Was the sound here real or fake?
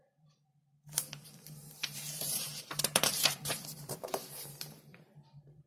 fake